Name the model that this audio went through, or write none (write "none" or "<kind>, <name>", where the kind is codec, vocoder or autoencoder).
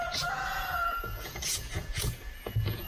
vocoder, Vocos